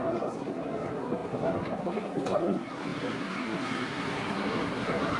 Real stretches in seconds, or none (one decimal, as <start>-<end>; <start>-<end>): none